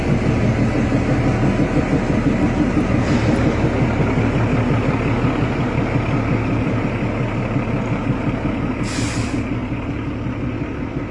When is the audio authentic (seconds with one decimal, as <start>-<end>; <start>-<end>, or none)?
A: 0.0-11.1